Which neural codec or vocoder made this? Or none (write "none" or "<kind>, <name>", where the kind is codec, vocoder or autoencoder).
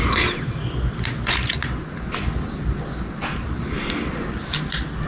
none